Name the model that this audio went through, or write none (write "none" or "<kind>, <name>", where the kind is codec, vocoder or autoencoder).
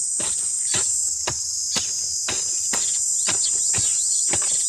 vocoder, BigVGAN v2